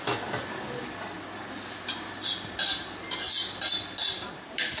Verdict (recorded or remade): recorded